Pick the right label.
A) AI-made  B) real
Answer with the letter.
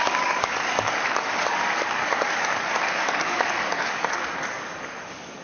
A